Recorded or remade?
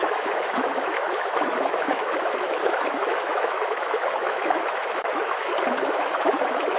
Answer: remade